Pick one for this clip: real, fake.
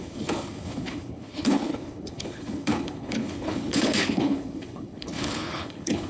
fake